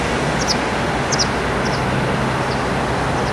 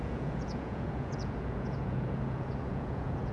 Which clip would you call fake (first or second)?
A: second